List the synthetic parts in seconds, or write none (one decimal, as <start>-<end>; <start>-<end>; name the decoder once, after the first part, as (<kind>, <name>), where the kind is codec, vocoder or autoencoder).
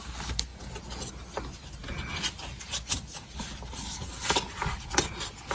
none